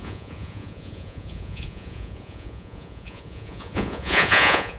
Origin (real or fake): fake